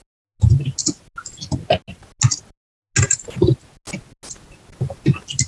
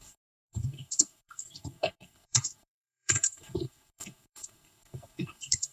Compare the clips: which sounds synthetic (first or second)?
second